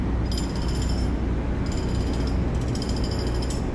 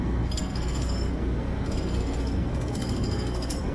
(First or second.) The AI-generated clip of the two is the second